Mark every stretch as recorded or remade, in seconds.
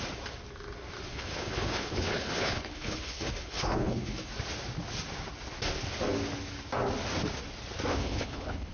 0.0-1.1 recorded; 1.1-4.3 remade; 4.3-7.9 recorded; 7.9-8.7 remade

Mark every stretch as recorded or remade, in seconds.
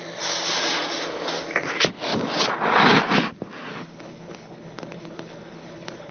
0.0-3.7 recorded; 3.7-6.1 remade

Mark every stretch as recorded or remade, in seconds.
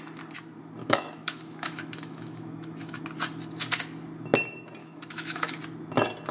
0.0-0.8 recorded; 0.8-3.0 remade; 3.0-4.8 recorded; 4.8-5.6 remade; 5.6-6.3 recorded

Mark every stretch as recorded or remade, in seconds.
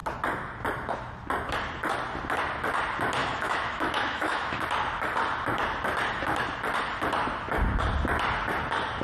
0.0-3.2 recorded; 3.2-4.6 remade; 4.6-9.0 recorded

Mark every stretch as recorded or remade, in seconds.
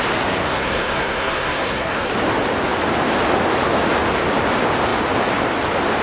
0.0-0.4 recorded; 0.4-2.1 remade; 2.1-6.0 recorded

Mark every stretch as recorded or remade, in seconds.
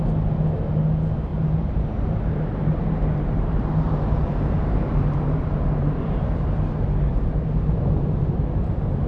0.0-1.3 recorded; 1.3-6.4 remade; 6.4-7.1 recorded; 7.1-8.2 remade; 8.2-9.1 recorded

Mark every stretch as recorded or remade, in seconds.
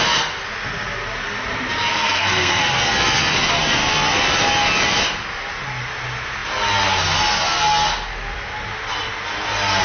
0.0-1.9 recorded; 1.9-2.6 remade; 2.6-9.8 recorded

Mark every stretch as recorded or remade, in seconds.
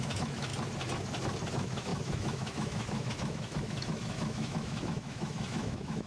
0.0-0.5 remade; 0.5-1.5 recorded; 1.5-6.1 remade